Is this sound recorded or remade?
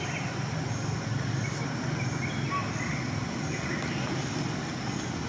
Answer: recorded